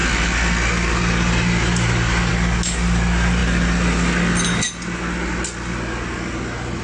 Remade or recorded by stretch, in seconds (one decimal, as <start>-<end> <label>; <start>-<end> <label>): 0.0-6.8 recorded